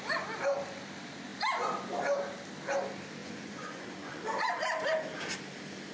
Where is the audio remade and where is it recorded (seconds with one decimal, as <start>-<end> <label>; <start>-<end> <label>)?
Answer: 0.0-3.2 recorded; 3.2-4.2 remade; 4.2-5.9 recorded